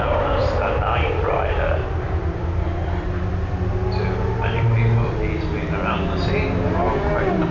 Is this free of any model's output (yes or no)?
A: yes